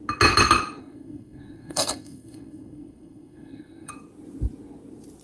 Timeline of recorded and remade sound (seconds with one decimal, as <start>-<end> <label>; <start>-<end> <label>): 0.0-0.8 recorded; 0.8-3.9 remade; 3.9-5.2 recorded